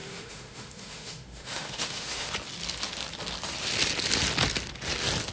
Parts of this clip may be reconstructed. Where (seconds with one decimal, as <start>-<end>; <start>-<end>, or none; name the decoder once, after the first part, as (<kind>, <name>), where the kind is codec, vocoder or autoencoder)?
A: 0.0-2.3 (autoencoder, DAC-VAE)